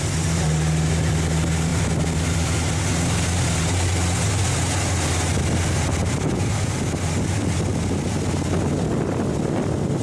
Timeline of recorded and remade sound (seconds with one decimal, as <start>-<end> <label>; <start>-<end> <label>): 0.0-10.0 recorded